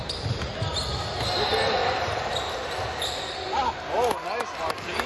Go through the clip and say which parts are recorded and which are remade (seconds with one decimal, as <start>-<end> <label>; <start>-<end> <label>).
0.0-5.1 recorded